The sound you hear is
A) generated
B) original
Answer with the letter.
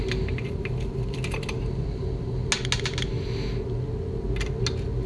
B